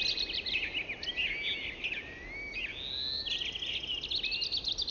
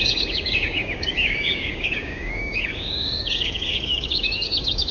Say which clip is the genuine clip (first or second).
first